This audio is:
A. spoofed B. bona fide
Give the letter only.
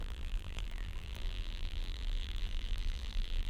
A